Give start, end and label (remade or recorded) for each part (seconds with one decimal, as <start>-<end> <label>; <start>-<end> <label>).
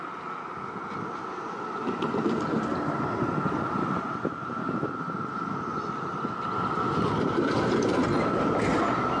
0.0-9.2 recorded